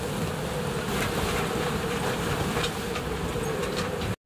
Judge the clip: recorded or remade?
recorded